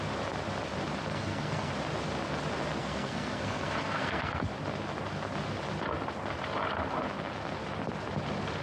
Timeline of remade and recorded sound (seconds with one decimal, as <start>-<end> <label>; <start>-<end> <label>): 0.0-1.1 recorded; 1.1-1.7 remade; 1.7-2.8 recorded; 2.8-4.5 remade; 4.5-8.6 recorded